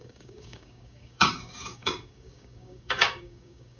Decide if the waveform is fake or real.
fake